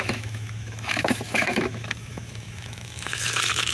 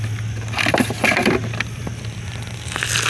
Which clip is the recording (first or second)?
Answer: second